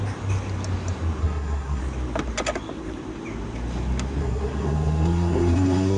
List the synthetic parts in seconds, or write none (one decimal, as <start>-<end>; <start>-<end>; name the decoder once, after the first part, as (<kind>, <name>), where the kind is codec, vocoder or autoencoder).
1.2-1.8 (codec, SNAC); 4.2-6.0